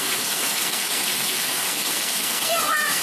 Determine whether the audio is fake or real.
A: fake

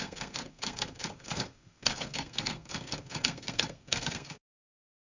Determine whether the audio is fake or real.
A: fake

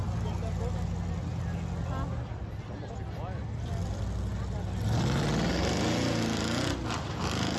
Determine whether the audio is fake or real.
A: real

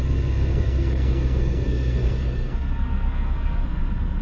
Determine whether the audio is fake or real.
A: fake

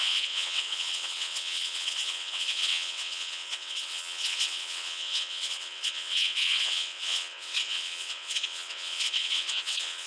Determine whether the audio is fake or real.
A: fake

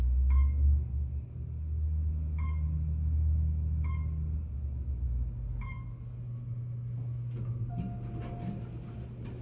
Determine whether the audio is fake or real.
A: real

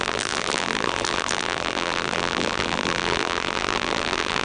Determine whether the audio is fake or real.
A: fake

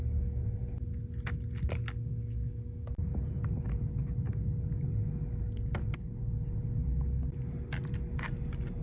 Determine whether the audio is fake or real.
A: real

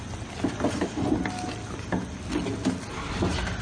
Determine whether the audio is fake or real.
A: real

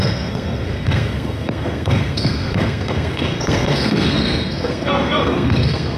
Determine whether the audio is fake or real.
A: fake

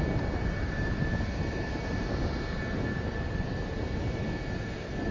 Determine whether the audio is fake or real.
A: real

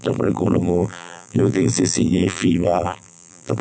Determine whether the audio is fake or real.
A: fake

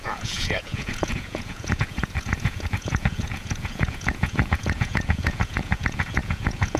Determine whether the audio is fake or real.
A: fake